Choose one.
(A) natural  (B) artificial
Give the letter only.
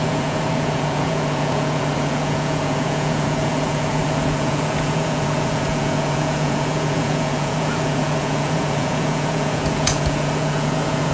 B